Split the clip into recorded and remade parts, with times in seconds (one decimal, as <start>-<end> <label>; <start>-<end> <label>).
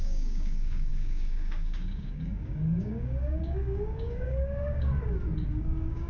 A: 0.0-4.9 remade; 4.9-5.6 recorded; 5.6-6.1 remade